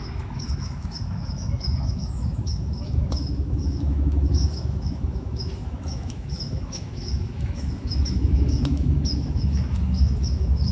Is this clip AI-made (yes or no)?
yes